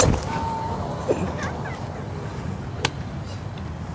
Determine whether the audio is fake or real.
real